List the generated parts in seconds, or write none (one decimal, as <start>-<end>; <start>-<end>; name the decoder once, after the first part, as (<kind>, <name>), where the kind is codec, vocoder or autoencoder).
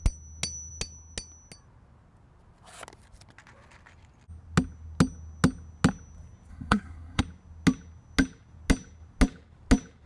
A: 6.5-7.2 (codec, SNAC)